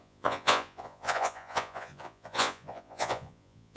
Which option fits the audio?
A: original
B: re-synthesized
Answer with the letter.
B